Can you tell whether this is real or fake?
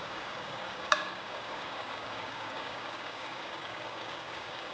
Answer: fake